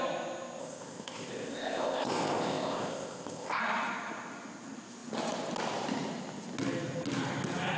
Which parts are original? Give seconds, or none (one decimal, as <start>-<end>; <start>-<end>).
0.0-0.6; 3.6-7.8